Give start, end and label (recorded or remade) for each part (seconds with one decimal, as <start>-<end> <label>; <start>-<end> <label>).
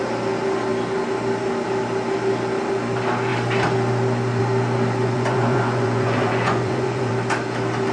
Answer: 0.0-5.0 recorded; 5.0-7.1 remade; 7.1-7.9 recorded